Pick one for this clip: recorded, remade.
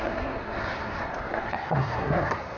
remade